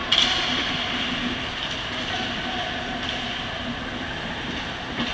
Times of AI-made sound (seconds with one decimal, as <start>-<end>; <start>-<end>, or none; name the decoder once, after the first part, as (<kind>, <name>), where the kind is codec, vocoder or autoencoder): none